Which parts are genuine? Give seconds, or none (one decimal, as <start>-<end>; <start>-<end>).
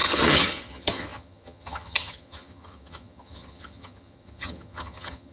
none